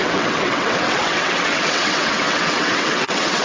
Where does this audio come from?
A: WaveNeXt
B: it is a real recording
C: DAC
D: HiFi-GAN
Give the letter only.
A